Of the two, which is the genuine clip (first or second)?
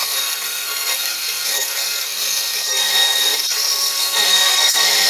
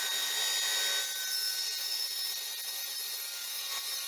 second